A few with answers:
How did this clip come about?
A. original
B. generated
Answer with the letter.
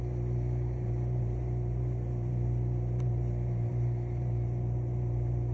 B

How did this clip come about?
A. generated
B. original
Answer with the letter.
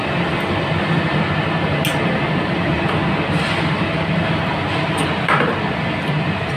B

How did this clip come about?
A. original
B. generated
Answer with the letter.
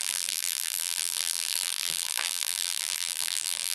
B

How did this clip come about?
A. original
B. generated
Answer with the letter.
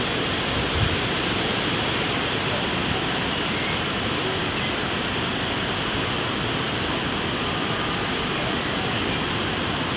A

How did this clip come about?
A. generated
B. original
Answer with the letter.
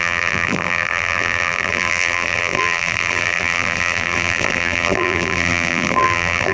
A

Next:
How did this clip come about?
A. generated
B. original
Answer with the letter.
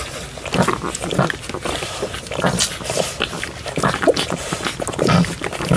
B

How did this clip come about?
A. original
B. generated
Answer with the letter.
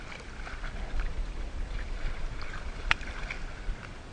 A